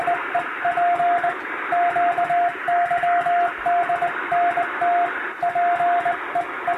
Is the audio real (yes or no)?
yes